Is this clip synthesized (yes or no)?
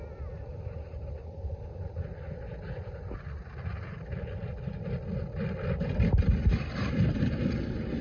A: no